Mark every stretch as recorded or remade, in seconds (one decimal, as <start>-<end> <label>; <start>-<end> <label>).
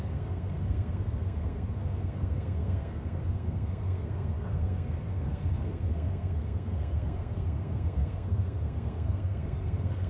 0.0-10.1 remade